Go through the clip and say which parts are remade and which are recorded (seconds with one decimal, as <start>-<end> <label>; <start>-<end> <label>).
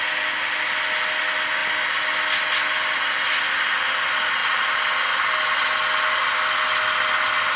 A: 0.0-7.6 recorded